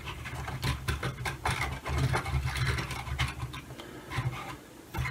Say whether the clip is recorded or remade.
recorded